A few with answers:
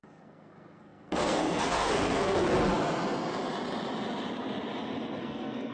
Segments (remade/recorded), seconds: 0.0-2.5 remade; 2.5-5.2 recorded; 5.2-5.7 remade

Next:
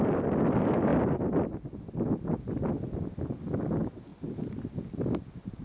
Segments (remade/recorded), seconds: 0.0-5.6 recorded

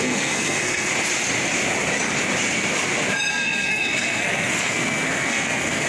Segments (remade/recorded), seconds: 0.0-0.9 remade; 0.9-3.3 recorded; 3.3-5.9 remade

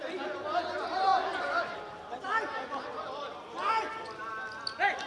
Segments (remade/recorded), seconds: 0.0-5.1 recorded